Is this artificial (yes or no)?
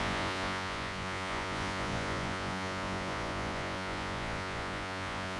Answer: yes